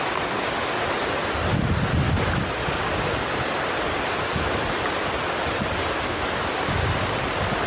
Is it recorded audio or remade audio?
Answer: recorded